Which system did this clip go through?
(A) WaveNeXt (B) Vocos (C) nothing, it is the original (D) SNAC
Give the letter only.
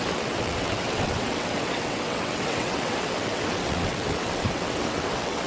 A